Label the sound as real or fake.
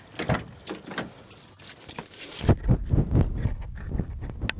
real